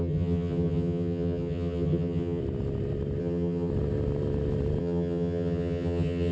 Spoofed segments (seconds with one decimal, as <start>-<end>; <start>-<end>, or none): 0.0-2.4; 3.2-3.7; 4.8-6.3